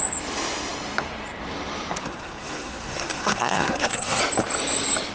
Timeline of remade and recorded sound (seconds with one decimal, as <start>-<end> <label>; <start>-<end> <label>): 0.0-2.0 recorded; 2.0-4.2 remade; 4.2-5.1 recorded